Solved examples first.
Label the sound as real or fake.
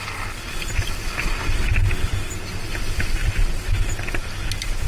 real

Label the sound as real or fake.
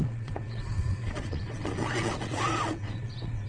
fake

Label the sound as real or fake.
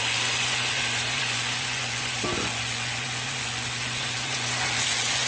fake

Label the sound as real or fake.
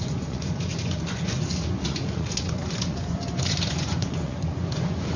fake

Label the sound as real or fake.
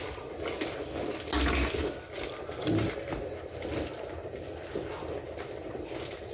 real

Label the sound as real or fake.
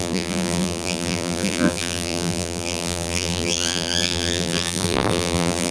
fake